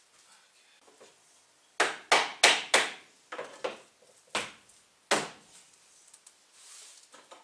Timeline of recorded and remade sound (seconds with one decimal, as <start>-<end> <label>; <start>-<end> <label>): 0.0-7.4 recorded